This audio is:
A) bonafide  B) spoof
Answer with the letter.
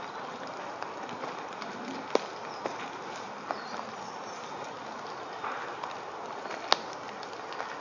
A